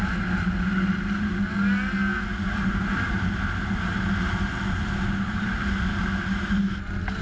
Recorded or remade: recorded